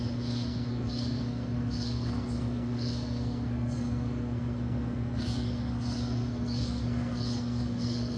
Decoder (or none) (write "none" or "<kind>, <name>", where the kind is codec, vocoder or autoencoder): codec, SNAC